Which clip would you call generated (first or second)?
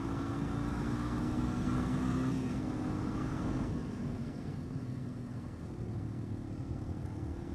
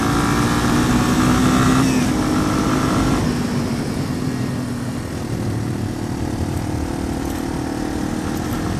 first